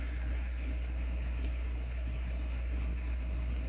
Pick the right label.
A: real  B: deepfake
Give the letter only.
B